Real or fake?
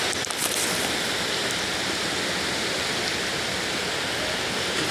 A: fake